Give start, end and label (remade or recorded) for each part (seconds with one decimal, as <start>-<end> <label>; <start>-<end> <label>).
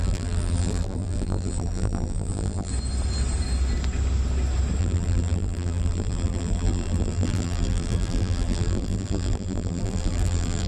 0.0-2.7 remade; 2.7-4.8 recorded; 4.8-10.7 remade